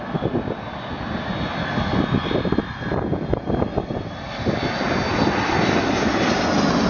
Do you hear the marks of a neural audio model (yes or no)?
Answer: no